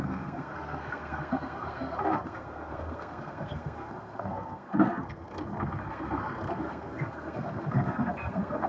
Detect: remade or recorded remade